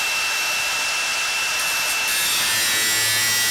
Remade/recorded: recorded